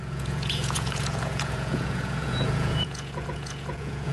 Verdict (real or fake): fake